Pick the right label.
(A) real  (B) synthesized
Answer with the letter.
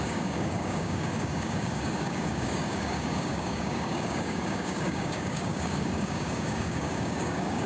B